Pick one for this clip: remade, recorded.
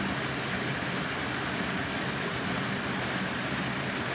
recorded